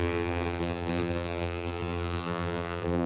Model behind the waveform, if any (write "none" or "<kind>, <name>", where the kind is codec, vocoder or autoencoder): vocoder, BigVGAN v2